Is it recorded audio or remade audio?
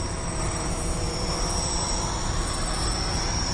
remade